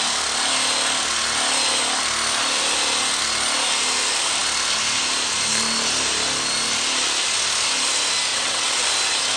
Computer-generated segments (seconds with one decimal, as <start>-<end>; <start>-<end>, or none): 8.3-8.8